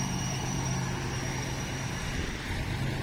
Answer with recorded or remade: recorded